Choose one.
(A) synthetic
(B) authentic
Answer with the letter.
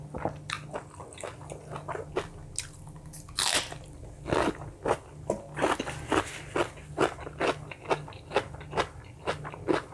B